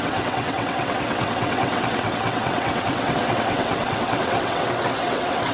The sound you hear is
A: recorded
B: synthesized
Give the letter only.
B